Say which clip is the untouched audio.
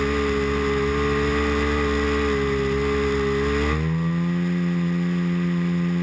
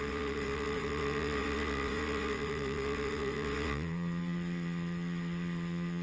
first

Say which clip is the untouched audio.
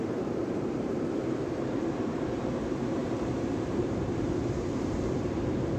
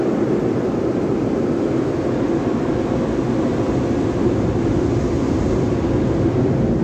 second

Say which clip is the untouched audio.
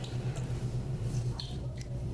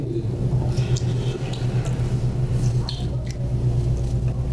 second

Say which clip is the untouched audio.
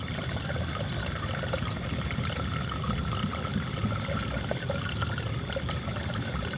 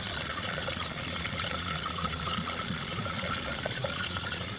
first